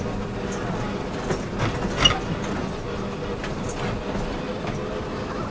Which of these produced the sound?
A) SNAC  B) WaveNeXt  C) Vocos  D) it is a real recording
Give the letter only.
D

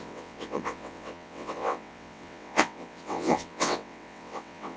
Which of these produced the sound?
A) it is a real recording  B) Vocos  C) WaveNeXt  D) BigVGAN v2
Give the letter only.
C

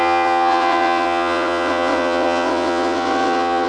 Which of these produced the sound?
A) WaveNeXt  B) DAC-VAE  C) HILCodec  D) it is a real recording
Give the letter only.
A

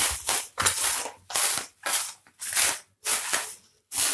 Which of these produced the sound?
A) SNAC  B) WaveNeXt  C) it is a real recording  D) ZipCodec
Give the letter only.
C